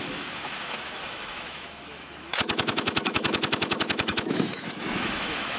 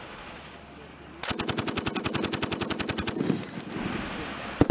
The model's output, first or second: first